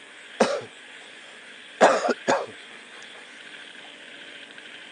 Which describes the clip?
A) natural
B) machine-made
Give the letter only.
B